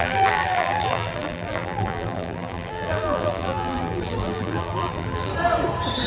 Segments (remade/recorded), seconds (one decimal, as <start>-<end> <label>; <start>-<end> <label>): 0.0-5.3 remade; 5.3-6.1 recorded